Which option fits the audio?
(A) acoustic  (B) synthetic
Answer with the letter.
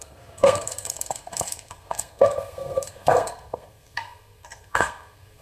B